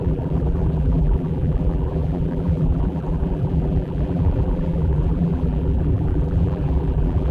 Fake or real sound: fake